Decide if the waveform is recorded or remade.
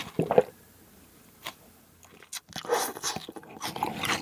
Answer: recorded